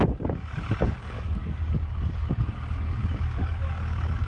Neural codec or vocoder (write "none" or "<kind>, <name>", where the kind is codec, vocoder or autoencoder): codec, DAC